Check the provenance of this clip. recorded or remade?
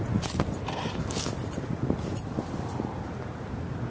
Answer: recorded